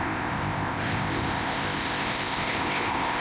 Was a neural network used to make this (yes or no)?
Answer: yes